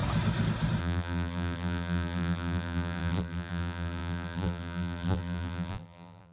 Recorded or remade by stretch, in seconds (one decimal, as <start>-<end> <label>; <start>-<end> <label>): 0.0-0.8 recorded; 0.8-6.3 remade